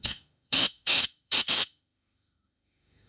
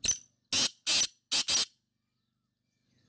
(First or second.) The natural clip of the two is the second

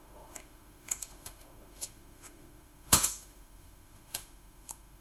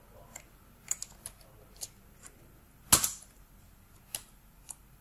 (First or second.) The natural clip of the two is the second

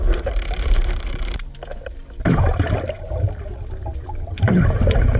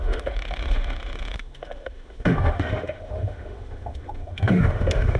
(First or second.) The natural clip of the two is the first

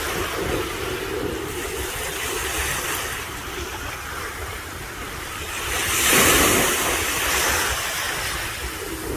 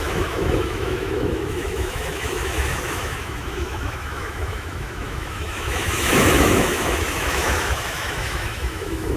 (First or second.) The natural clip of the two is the first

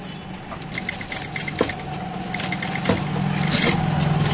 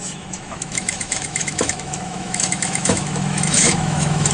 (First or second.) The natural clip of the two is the first